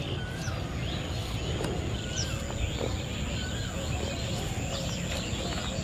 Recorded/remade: recorded